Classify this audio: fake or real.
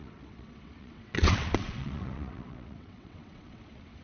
fake